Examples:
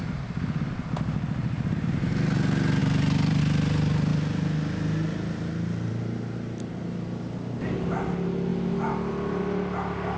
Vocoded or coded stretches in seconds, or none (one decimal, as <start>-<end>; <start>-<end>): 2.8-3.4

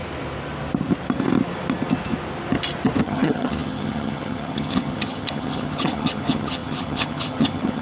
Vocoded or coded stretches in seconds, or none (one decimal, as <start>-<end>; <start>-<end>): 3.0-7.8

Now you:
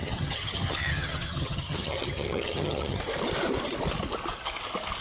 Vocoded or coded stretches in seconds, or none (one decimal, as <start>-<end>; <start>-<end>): 0.0-3.0

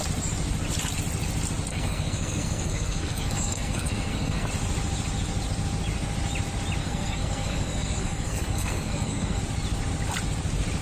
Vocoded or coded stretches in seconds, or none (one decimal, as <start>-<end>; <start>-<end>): 1.7-4.5; 6.8-9.4